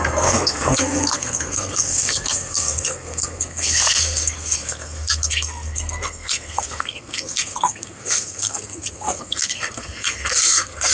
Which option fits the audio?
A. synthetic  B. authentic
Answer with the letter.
A